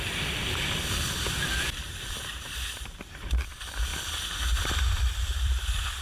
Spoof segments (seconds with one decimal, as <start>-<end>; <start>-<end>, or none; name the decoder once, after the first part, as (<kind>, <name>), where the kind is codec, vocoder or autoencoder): 0.0-6.0 (vocoder, BigVGAN v2)